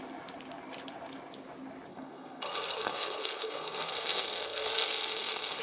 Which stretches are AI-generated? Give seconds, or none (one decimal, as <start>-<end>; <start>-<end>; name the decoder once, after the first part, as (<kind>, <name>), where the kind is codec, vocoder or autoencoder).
1.9-5.6 (codec, SNAC)